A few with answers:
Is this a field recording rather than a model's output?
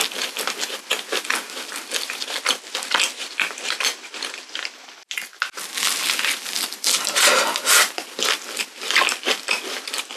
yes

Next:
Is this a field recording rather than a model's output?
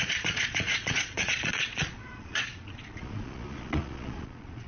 no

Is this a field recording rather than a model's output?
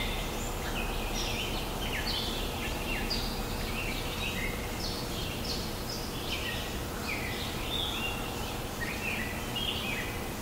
yes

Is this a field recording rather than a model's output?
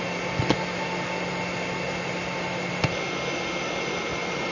yes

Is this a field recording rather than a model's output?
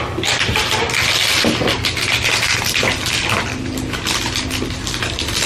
yes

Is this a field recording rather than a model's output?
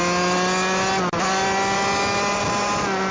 yes